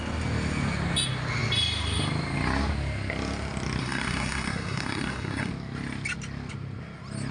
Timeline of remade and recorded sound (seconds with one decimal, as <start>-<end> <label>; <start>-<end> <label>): 0.0-3.8 recorded; 3.8-5.5 remade; 5.5-7.3 recorded

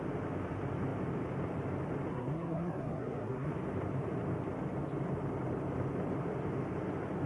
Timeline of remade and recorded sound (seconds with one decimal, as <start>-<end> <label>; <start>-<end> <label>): 0.0-2.1 recorded; 2.1-3.5 remade; 3.5-7.3 recorded

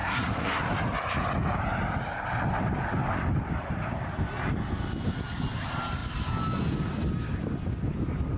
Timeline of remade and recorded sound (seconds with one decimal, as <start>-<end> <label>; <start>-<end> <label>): 0.0-0.6 remade; 0.6-8.4 recorded

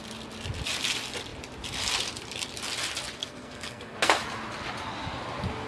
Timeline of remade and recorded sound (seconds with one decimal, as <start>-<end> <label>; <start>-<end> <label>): 0.0-3.2 recorded; 3.2-4.2 remade; 4.2-5.7 recorded

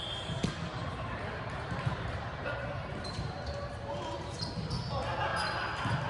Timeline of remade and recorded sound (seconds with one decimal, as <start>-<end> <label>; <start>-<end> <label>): 0.0-0.7 recorded; 0.7-4.4 remade; 4.4-6.1 recorded

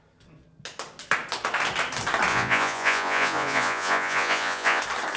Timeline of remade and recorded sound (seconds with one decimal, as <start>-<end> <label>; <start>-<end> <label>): 0.0-2.3 recorded; 2.3-4.8 remade; 4.8-5.2 recorded

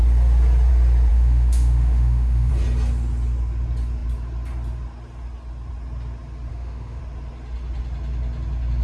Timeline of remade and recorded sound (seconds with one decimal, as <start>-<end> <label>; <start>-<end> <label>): 0.0-1.1 recorded; 1.1-2.5 remade; 2.5-6.5 recorded; 6.5-7.0 remade; 7.0-8.8 recorded

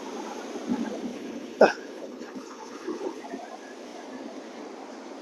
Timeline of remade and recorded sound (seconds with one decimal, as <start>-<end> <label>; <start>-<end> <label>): 0.0-1.1 recorded; 1.1-3.2 remade; 3.2-5.2 recorded